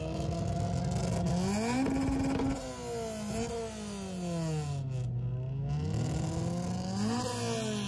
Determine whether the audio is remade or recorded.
recorded